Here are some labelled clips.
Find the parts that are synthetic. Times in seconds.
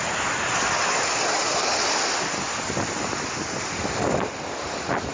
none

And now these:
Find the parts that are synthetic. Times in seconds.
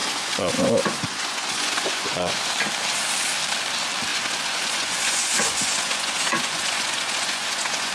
0.0-2.5 (vocoder, Vocos); 4.1-7.9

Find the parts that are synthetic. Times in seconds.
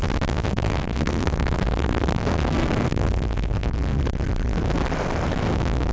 0.5-4.0 (codec, SNAC)